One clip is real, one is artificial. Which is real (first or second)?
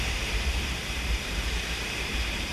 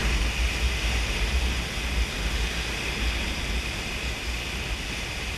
second